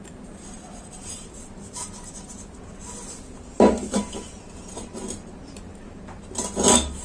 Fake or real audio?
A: real